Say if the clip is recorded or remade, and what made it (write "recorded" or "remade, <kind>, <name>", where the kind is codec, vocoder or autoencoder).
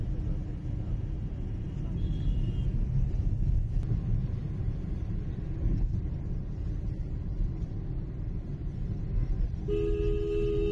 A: recorded